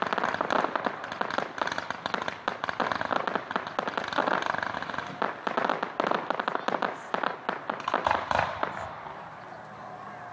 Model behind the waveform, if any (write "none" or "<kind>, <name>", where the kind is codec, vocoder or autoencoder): none